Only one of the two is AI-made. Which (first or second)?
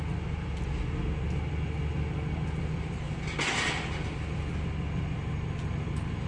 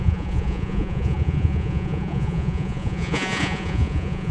second